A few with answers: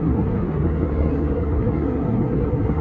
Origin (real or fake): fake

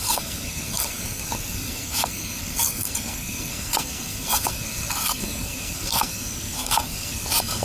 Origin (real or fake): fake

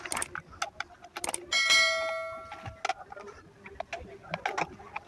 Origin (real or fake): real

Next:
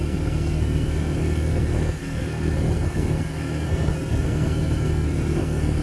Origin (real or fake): fake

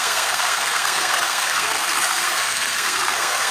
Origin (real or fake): fake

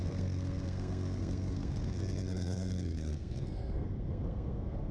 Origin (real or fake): fake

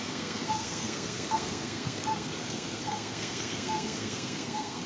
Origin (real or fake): fake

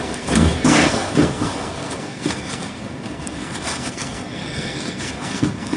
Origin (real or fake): fake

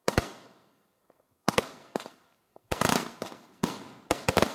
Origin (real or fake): fake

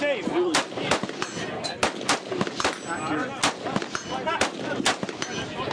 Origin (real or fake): real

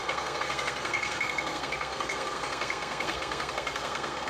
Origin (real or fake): fake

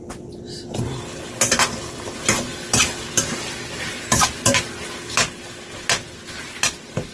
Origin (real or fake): real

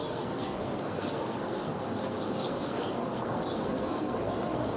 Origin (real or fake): fake